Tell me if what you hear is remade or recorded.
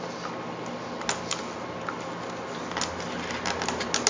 recorded